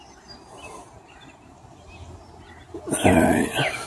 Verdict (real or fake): real